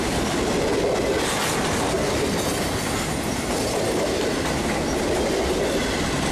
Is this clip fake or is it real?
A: real